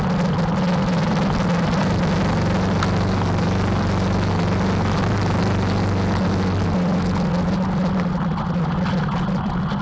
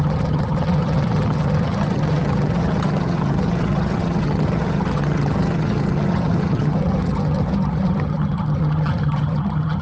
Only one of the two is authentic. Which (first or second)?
first